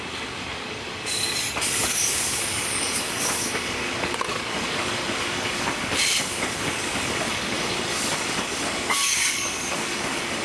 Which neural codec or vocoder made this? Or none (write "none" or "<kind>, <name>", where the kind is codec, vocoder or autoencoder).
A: codec, DAC